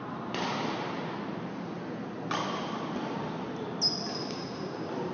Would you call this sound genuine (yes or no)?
yes